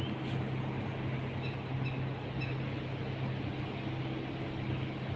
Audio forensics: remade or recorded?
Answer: recorded